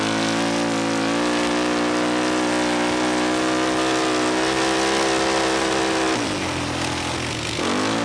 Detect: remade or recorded recorded